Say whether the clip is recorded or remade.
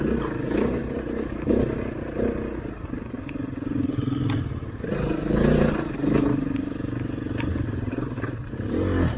recorded